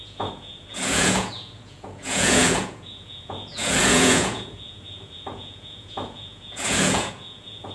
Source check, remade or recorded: remade